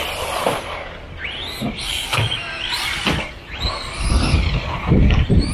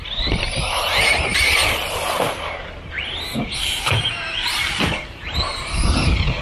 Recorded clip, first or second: first